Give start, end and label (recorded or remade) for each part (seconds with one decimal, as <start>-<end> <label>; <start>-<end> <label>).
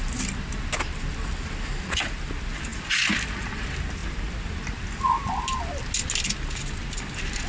0.0-7.5 recorded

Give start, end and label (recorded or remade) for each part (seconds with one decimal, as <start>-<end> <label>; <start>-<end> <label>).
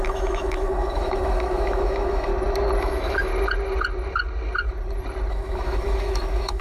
0.0-2.3 remade; 2.3-2.8 recorded; 2.8-3.3 remade; 3.3-5.3 recorded; 5.3-6.6 remade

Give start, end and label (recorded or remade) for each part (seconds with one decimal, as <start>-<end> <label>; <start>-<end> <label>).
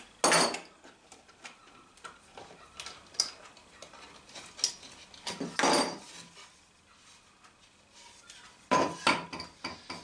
0.0-10.0 recorded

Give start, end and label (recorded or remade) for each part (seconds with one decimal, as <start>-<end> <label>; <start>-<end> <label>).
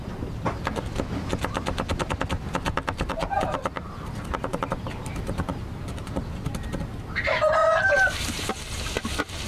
0.0-3.1 recorded; 3.1-6.2 remade; 6.2-7.6 recorded; 7.6-8.8 remade; 8.8-9.5 recorded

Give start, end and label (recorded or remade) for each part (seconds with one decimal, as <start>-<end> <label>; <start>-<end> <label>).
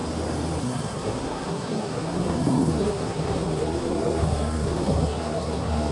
0.0-0.6 recorded; 0.6-5.9 remade